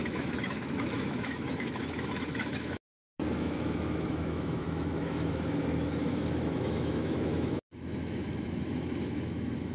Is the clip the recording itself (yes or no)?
no